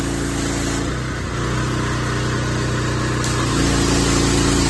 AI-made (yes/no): no